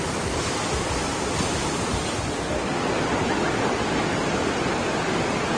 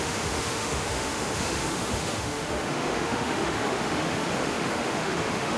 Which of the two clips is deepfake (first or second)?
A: second